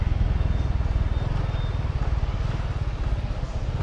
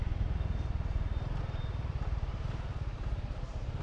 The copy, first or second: second